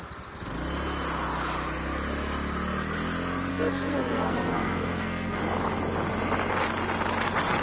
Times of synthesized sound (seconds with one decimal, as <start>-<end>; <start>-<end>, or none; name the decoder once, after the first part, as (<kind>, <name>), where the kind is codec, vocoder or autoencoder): 3.5-5.4 (codec, SNAC)